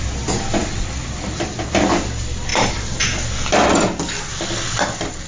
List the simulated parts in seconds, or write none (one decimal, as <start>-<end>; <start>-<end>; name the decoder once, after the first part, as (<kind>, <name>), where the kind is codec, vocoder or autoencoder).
0.6-1.5 (vocoder, BigVGAN v2)